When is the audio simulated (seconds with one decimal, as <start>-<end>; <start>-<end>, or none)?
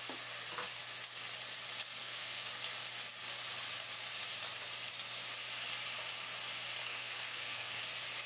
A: 2.0-2.5; 6.8-7.8